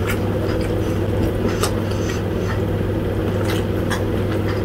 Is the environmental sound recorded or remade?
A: recorded